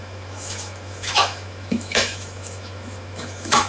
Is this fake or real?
fake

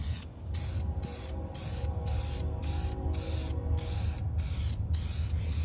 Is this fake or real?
real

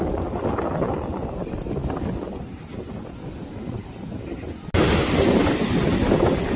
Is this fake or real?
real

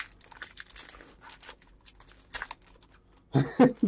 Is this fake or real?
real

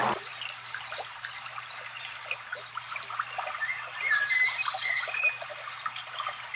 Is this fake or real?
real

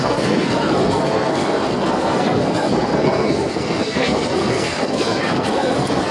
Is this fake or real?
fake